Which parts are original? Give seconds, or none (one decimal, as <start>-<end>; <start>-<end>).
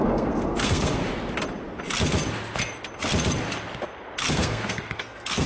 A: 1.0-4.3